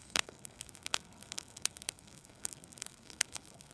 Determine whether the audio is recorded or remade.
remade